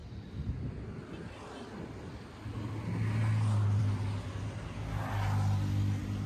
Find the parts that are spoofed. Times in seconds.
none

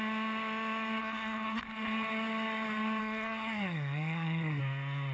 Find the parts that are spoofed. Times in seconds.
1.0-1.6; 3.0-4.6

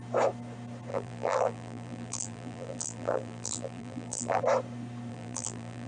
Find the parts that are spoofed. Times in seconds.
0.9-4.4; 5.1-5.9